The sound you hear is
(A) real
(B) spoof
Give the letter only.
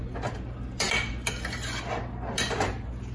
A